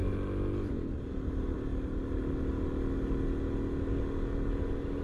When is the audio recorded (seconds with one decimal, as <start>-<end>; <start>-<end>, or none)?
0.0-5.0